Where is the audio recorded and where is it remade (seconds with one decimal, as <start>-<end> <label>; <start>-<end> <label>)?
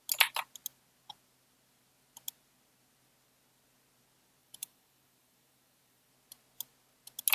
0.0-4.4 recorded; 4.4-6.1 remade; 6.1-7.3 recorded